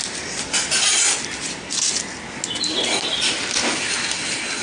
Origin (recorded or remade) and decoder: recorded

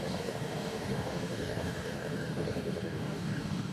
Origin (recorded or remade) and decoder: remade, codec, DAC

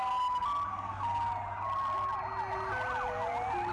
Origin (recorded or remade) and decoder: recorded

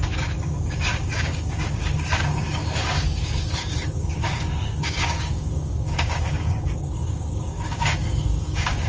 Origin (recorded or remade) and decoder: remade, codec, DAC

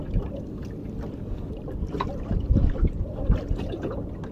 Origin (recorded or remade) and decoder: recorded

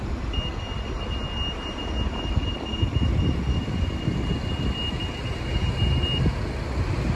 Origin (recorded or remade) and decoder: recorded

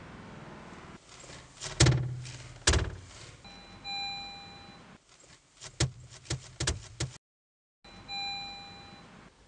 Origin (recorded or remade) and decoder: recorded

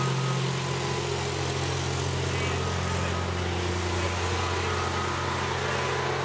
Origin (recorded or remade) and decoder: recorded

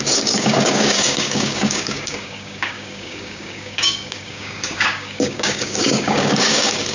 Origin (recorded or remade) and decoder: remade, codec, DAC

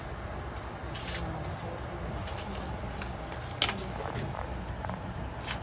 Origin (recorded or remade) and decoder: recorded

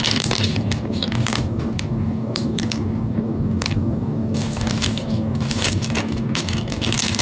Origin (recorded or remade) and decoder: remade, codec, DAC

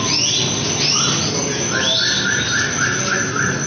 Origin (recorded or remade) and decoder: recorded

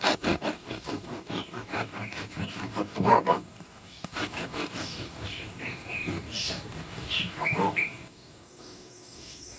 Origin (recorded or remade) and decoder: remade, codec, DAC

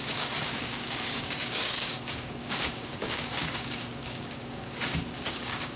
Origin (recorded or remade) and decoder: remade, codec, DAC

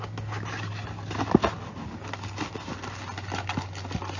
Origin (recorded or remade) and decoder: recorded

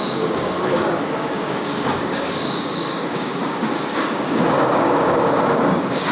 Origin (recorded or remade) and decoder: remade, codec, DAC